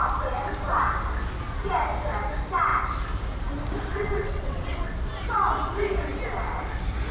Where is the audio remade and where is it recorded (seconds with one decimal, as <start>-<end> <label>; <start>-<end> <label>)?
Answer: 0.0-3.9 recorded; 3.9-4.9 remade; 4.9-7.1 recorded

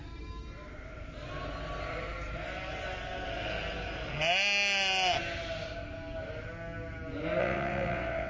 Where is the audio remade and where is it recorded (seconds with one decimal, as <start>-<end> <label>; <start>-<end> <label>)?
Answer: 0.0-7.4 recorded; 7.4-8.3 remade

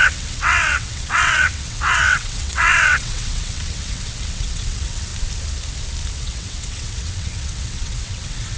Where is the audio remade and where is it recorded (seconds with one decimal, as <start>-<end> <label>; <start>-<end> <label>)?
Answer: 0.0-5.1 remade; 5.1-6.1 recorded; 6.1-8.6 remade